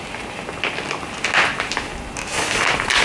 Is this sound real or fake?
real